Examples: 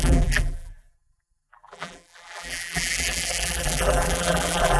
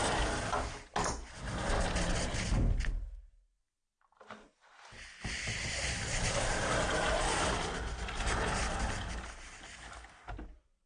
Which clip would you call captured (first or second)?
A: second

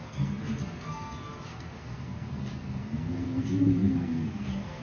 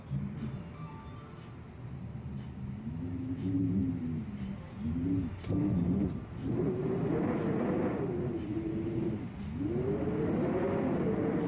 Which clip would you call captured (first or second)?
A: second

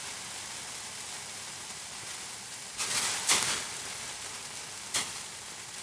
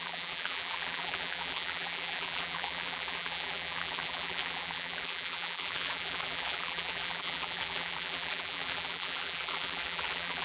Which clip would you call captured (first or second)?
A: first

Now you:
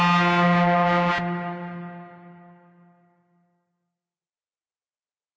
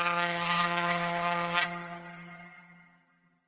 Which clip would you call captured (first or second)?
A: first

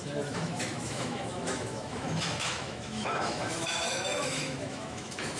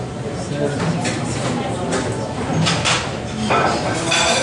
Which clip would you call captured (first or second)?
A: second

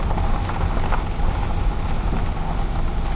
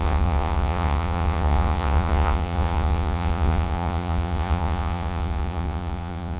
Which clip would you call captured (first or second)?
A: first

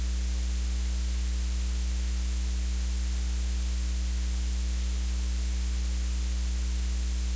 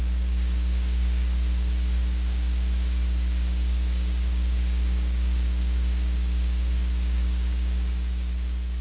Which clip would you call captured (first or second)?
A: first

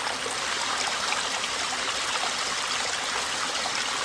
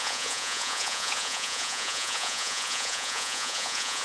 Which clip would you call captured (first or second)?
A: first